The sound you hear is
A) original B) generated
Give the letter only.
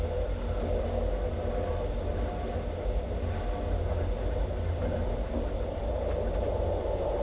A